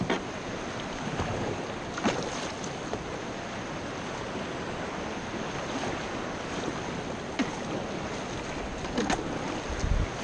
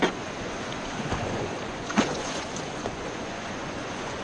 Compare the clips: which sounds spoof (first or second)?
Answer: second